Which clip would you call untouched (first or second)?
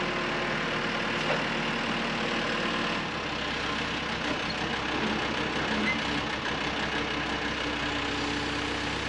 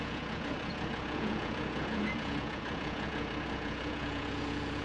first